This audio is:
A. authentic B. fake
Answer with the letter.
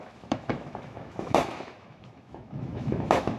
B